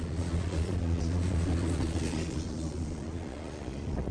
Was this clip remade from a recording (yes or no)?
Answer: yes